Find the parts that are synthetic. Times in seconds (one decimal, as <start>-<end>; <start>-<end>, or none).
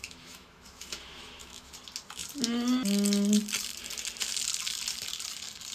0.0-1.7